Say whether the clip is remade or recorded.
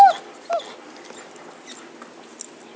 recorded